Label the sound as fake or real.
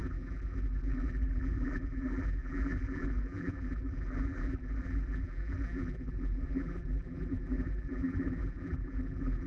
fake